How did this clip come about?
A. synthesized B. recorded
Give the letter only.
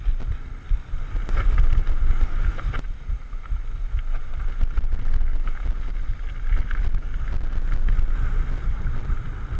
B